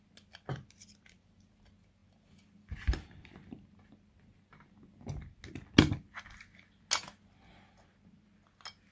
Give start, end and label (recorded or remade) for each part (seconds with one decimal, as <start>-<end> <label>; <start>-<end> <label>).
0.0-8.9 recorded